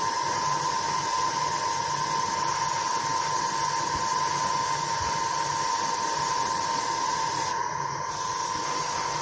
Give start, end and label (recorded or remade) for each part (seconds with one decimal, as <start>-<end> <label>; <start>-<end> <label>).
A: 0.0-7.0 recorded; 7.0-8.0 remade; 8.0-9.2 recorded